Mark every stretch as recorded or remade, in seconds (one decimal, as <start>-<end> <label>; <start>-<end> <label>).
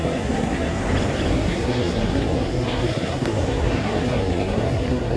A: 0.0-0.8 remade; 0.8-1.3 recorded; 1.3-5.2 remade